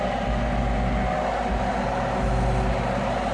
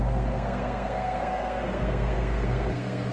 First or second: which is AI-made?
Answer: second